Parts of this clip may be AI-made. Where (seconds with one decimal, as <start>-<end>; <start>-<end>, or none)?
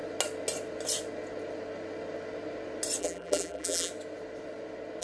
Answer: 3.0-3.9